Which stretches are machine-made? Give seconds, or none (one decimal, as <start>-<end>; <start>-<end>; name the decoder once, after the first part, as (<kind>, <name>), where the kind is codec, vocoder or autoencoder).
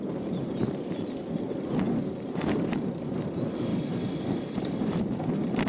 none